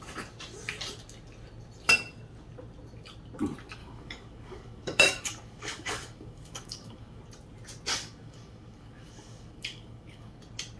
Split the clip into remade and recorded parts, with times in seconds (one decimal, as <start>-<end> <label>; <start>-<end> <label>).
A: 0.0-3.8 recorded; 3.8-7.2 remade; 7.2-7.9 recorded; 7.9-10.4 remade; 10.4-10.8 recorded

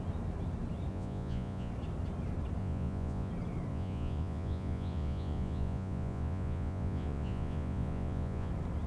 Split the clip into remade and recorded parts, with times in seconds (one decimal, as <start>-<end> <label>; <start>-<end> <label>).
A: 0.0-0.9 recorded; 0.9-1.7 remade; 1.7-2.6 recorded; 2.6-3.3 remade; 3.3-3.7 recorded; 3.7-8.5 remade; 8.5-8.9 recorded

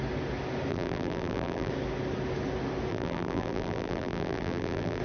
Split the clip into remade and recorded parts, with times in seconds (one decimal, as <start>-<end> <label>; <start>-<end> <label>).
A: 0.0-0.7 recorded; 0.7-1.7 remade; 1.7-2.9 recorded; 2.9-5.0 remade

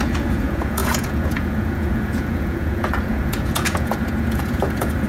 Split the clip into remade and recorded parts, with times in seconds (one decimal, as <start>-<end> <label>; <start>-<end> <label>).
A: 0.0-5.1 remade

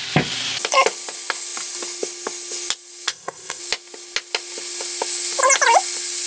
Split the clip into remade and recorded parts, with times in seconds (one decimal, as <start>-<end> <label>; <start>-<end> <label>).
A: 0.0-3.1 recorded; 3.1-3.6 remade; 3.6-6.3 recorded

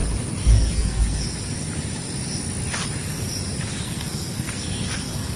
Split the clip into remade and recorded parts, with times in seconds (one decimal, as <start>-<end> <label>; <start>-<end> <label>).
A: 0.0-0.5 recorded; 0.5-1.2 remade; 1.2-3.8 recorded; 3.8-5.4 remade

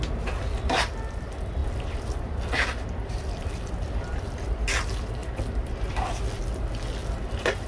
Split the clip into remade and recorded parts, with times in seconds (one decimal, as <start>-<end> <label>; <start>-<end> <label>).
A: 0.0-1.6 recorded; 1.6-4.8 remade; 4.8-5.2 recorded; 5.2-6.1 remade; 6.1-7.0 recorded; 7.0-7.7 remade

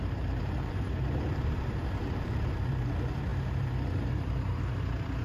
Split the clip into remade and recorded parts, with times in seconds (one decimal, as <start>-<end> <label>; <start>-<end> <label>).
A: 0.0-5.2 remade